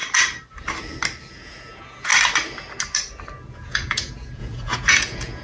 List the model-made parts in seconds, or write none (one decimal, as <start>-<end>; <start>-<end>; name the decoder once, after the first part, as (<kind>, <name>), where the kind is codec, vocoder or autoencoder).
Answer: 1.3-2.1 (vocoder, Vocos); 3.5-5.4